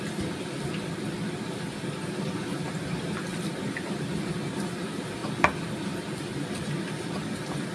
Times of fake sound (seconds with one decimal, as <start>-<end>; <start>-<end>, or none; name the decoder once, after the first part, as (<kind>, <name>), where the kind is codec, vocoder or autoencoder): 3.3-3.8 (vocoder, BigVGAN v2)